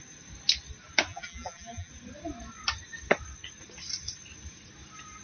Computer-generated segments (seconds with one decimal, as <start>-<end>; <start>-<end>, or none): 1.1-1.9